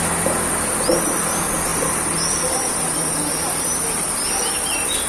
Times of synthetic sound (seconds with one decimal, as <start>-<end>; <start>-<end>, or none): none